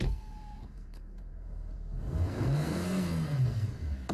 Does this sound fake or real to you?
fake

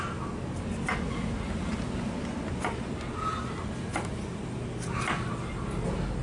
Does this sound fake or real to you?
real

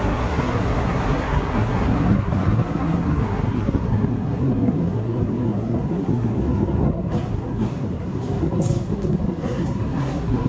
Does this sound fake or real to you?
fake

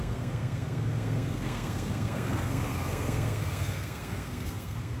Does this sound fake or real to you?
fake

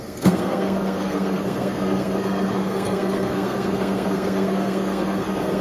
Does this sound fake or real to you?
fake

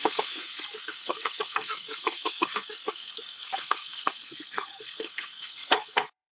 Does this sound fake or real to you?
fake